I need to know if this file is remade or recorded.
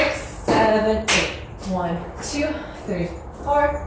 recorded